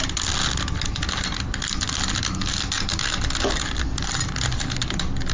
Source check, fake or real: real